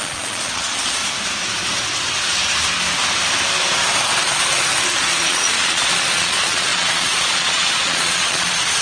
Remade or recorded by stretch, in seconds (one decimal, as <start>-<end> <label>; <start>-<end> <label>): 0.0-1.0 remade; 1.0-5.3 recorded; 5.3-8.8 remade